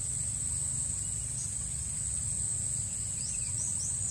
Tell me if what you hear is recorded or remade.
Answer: recorded